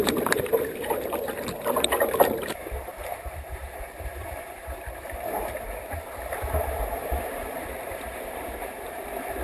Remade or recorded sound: remade